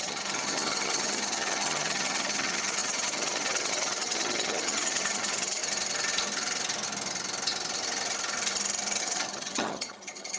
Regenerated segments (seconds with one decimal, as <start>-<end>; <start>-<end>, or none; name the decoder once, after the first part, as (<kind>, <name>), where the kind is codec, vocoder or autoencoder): 0.0-5.6 (vocoder, HiFi-GAN); 9.0-10.4